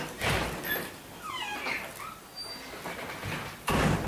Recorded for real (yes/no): yes